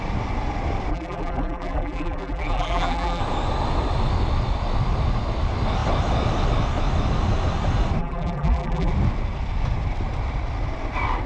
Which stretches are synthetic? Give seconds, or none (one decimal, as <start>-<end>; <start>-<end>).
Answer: 0.9-3.2; 8.0-8.9